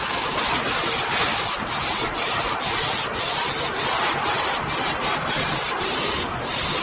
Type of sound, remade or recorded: recorded